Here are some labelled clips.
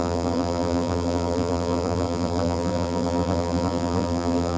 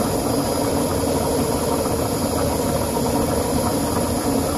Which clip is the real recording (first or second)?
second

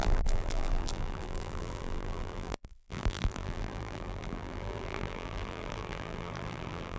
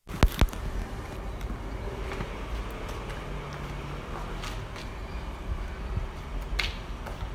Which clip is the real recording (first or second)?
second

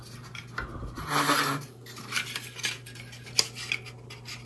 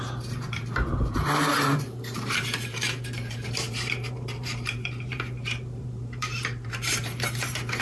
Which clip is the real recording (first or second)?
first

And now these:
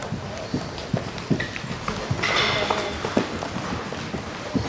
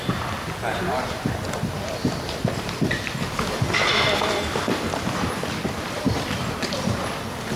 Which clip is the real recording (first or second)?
first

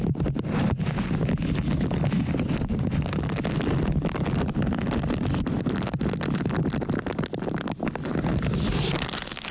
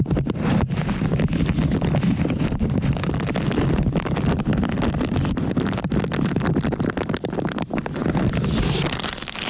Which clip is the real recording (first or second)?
first